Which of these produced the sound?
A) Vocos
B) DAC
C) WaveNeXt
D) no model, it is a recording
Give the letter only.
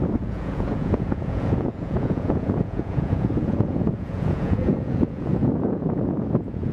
A